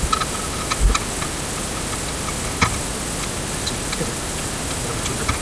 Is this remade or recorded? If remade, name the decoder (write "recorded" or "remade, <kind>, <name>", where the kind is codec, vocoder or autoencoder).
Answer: recorded